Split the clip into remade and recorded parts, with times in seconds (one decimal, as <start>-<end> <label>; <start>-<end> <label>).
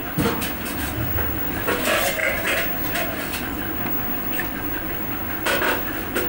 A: 0.0-0.9 remade; 0.9-2.2 recorded; 2.2-3.2 remade; 3.2-6.3 recorded